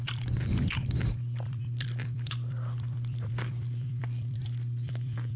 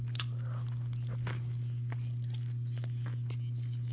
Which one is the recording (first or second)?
second